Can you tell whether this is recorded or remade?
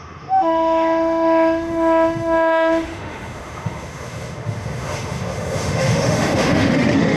remade